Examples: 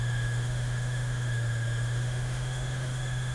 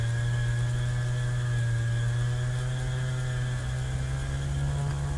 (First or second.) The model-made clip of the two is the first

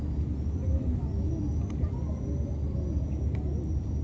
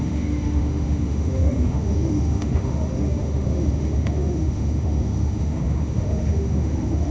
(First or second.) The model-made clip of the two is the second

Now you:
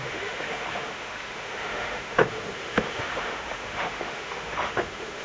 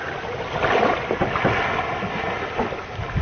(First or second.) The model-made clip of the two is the first